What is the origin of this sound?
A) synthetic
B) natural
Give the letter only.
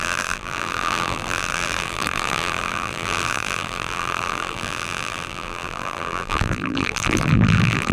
A